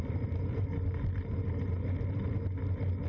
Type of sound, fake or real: real